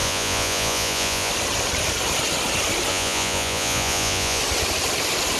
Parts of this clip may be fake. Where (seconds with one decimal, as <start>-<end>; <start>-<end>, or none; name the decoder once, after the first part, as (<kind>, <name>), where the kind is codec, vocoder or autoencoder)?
0.0-1.3 (vocoder, Vocos); 2.9-4.4

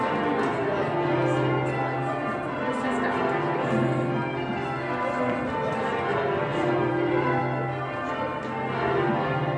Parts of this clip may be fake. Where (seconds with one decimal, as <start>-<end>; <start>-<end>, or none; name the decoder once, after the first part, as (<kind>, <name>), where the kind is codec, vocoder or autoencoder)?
6.5-7.4 (vocoder, BigVGAN v2)

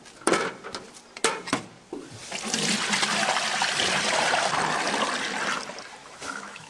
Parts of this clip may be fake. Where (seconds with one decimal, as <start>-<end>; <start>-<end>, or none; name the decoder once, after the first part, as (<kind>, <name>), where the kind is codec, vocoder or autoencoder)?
6.0-6.7 (autoencoder, DAC-VAE)

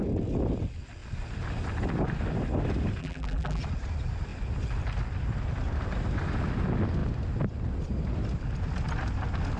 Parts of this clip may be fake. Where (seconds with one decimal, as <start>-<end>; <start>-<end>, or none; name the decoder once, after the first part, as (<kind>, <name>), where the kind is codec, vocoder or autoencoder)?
3.0-3.6 (vocoder, BigVGAN v2)

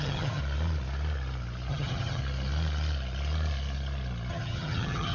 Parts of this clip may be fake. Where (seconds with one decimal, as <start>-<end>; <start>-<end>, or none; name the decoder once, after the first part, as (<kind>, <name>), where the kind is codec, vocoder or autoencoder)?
0.0-0.4 (vocoder, HiFi-GAN); 1.7-2.2; 4.3-5.1

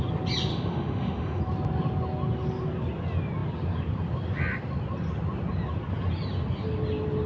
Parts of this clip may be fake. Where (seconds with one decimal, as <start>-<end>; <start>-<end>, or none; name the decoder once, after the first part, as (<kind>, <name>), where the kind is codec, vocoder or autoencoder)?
0.5-1.4 (autoencoder, DAC-VAE)

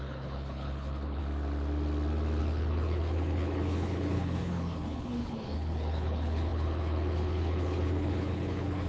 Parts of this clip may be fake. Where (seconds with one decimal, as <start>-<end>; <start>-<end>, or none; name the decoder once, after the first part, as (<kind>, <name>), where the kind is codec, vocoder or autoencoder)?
0.0-1.2 (codec, HILCodec); 2.4-8.9

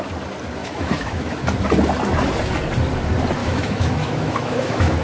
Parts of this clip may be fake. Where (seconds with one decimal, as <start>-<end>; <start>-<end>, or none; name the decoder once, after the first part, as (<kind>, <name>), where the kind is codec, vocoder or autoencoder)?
0.6-1.4 (autoencoder, DAC-VAE); 3.4-5.0